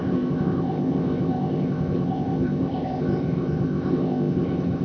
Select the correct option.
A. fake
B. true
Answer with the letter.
A